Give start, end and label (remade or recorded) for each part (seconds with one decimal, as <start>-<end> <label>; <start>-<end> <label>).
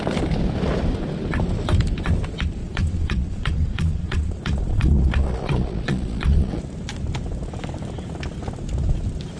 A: 0.0-2.6 recorded; 2.6-6.6 remade; 6.6-9.4 recorded